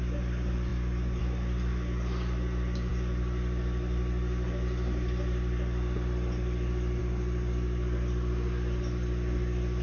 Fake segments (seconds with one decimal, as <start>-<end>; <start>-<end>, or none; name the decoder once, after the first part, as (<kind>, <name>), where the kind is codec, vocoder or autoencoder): none